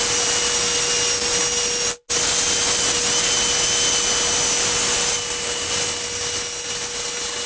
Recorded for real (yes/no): yes